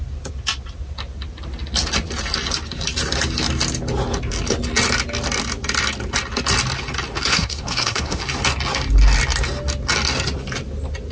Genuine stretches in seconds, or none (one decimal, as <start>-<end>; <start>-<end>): 0.0-7.3; 8.2-11.1